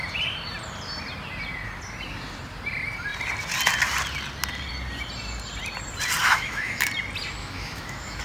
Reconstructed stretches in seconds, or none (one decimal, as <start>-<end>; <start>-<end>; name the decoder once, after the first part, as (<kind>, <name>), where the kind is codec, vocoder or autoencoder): 6.2-6.9 (autoencoder, DAC-VAE); 7.4-8.2